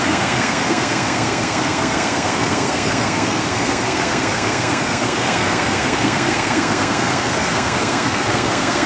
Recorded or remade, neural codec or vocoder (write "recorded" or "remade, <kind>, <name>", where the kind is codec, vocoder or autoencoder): remade, codec, SNAC